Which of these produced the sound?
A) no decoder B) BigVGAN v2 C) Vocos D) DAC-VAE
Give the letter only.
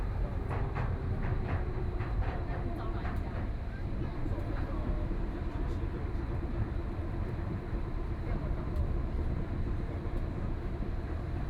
B